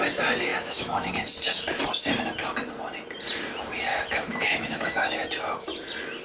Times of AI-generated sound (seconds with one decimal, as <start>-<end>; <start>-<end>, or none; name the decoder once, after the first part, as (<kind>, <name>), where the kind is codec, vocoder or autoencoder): 0.5-1.1 (autoencoder, DAC-VAE); 3.9-4.9